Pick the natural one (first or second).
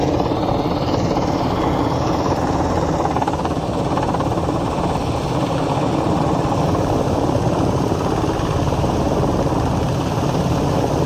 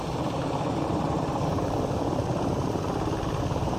first